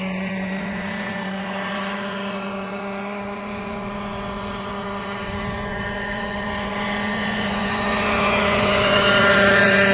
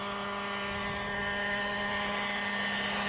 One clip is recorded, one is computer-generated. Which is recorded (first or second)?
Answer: second